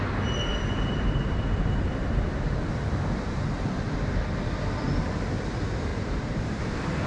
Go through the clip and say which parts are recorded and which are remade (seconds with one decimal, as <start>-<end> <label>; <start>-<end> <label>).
0.0-0.5 recorded; 0.5-2.5 remade; 2.5-5.9 recorded; 5.9-6.6 remade; 6.6-7.1 recorded